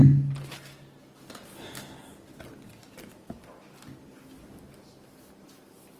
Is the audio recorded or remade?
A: recorded